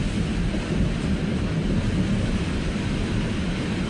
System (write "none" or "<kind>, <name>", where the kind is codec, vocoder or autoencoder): vocoder, BigVGAN v2